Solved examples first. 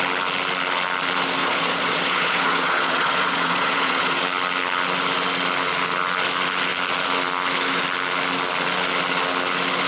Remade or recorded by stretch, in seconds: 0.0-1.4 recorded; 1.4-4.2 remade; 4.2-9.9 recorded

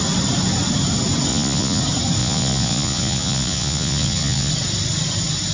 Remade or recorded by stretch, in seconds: 0.0-1.3 recorded; 1.3-1.8 remade; 1.8-2.2 recorded; 2.2-4.5 remade; 4.5-5.5 recorded

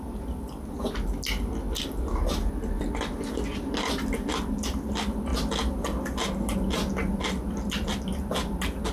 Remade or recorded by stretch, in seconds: 0.0-8.9 recorded

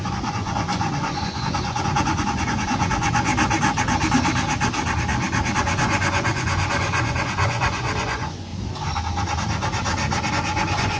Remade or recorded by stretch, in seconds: 0.0-3.3 remade; 3.3-5.6 recorded; 5.6-8.5 remade; 8.5-10.3 recorded; 10.3-11.0 remade

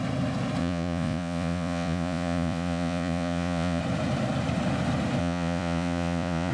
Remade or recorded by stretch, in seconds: 0.0-0.6 recorded; 0.6-3.8 remade; 3.8-5.2 recorded; 5.2-6.5 remade

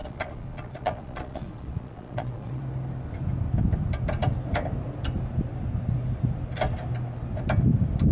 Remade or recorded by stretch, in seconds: 0.0-2.6 remade; 2.6-8.1 recorded

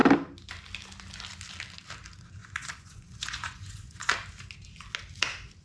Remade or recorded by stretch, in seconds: 0.0-2.4 recorded; 2.4-4.1 remade; 4.1-5.6 recorded